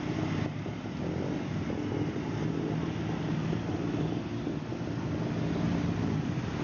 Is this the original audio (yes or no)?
yes